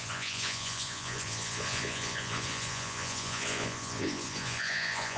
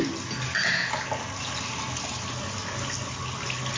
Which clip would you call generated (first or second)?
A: first